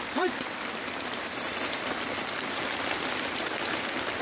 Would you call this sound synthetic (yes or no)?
no